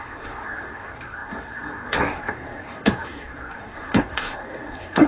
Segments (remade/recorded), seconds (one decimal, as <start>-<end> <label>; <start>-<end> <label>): 0.0-5.1 remade